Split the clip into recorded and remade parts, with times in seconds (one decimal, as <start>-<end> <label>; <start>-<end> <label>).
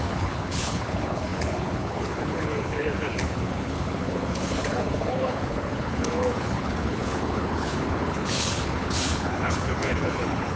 0.0-10.6 remade